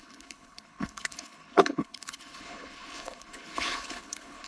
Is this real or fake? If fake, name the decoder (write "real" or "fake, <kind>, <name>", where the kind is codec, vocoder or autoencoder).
fake, codec, HILCodec